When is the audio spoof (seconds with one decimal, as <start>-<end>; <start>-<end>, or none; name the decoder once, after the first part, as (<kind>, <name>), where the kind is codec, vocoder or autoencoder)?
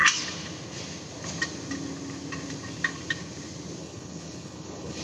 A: 3.8-5.0 (codec, HILCodec)